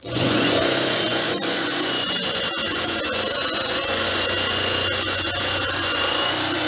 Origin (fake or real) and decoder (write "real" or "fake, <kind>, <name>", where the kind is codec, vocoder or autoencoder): fake, vocoder, Vocos